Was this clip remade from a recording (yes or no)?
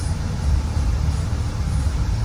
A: no